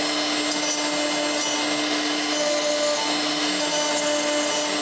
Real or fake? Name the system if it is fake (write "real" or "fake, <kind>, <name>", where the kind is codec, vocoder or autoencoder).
real